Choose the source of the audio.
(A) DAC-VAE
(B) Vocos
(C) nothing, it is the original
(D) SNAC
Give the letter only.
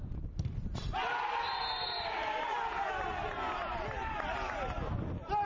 C